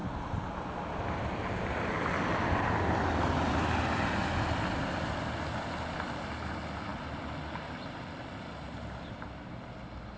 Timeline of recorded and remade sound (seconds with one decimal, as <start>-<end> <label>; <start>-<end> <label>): 0.0-10.2 recorded